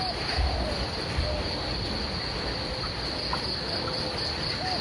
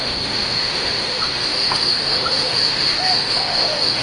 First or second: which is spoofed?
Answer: second